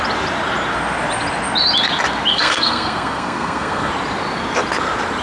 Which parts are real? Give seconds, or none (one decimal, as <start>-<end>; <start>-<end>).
0.0-2.3; 3.9-5.2